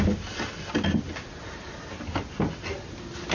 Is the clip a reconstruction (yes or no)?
no